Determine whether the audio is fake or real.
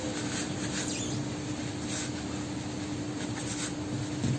real